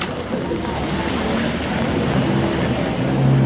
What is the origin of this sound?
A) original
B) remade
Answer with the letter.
A